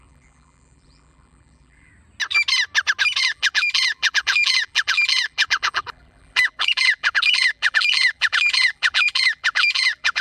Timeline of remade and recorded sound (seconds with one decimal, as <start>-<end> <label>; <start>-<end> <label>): 0.0-1.9 remade; 1.9-3.2 recorded; 3.2-10.2 remade